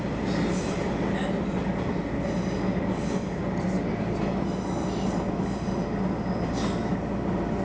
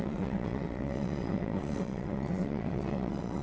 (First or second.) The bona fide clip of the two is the first